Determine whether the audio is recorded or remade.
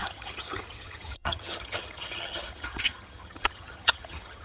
remade